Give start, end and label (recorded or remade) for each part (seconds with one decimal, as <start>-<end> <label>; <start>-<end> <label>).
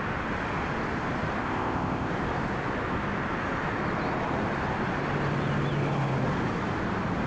0.0-1.4 recorded; 1.4-2.1 remade; 2.1-7.3 recorded